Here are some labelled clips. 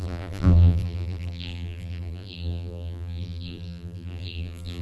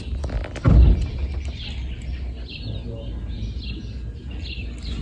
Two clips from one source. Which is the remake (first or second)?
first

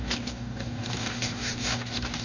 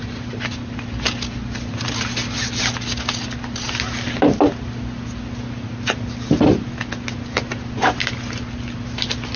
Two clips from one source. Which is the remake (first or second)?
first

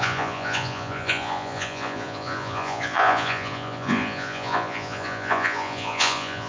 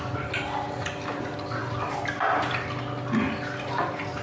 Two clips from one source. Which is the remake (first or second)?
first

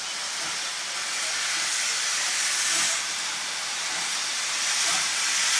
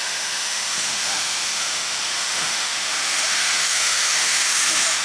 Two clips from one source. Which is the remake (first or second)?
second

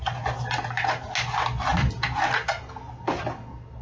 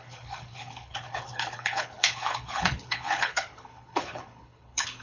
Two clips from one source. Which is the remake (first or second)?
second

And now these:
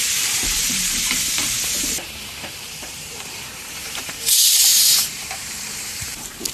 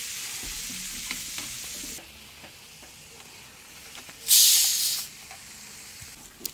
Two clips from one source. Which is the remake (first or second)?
first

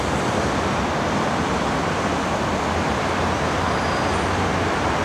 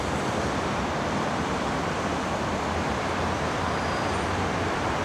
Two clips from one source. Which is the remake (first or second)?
second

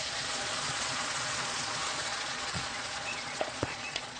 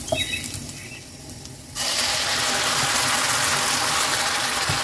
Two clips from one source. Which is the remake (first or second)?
first